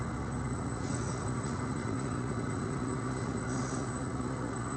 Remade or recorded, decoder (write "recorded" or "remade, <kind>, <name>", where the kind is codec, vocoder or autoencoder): remade, vocoder, Vocos